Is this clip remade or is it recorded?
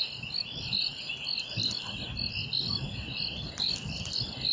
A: recorded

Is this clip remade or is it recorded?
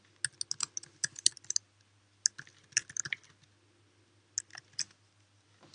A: recorded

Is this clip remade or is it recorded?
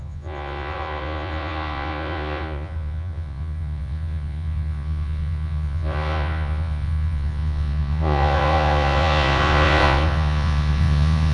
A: remade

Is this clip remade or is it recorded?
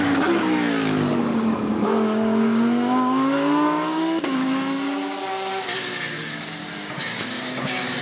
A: remade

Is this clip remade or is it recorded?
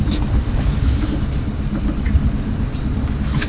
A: recorded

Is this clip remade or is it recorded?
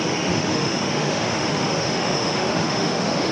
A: remade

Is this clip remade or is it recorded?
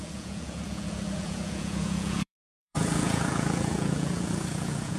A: remade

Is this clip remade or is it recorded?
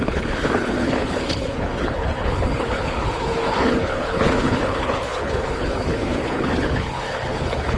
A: remade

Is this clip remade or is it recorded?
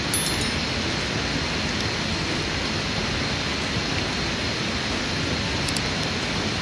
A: recorded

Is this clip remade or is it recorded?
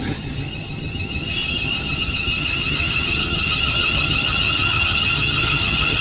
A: remade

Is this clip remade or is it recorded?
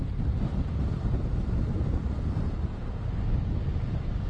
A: recorded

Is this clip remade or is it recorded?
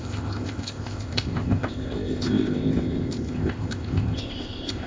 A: remade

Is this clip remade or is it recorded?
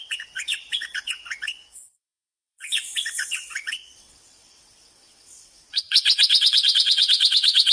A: remade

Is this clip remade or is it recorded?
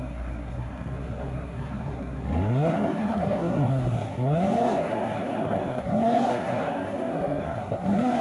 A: remade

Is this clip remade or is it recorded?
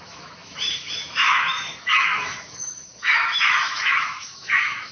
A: remade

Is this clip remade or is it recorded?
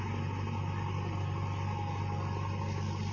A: recorded